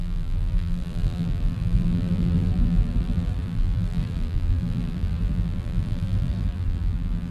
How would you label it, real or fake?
fake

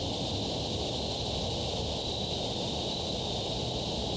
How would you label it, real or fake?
real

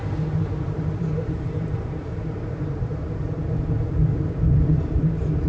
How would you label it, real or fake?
fake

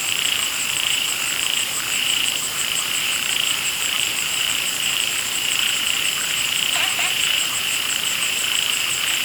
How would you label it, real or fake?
fake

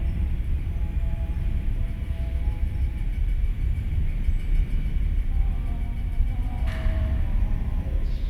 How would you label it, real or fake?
fake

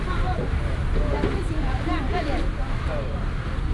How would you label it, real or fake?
fake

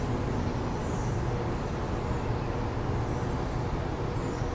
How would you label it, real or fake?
real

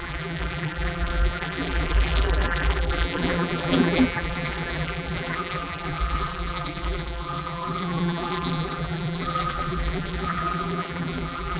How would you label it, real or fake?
fake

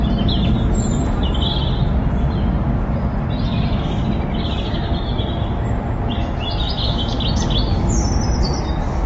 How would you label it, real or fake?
real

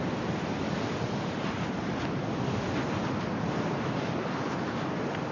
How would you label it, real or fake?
fake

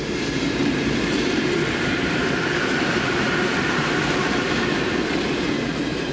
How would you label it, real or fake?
fake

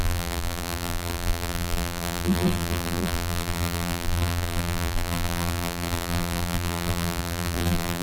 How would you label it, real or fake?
fake